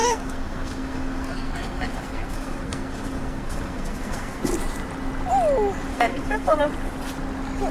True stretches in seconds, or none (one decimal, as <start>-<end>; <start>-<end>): 4.4-5.9; 6.6-7.7

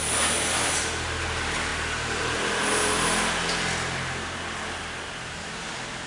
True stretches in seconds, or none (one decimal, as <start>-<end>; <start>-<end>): 0.0-6.1